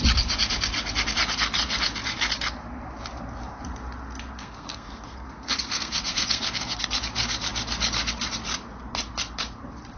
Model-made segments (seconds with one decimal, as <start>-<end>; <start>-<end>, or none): 4.4-6.8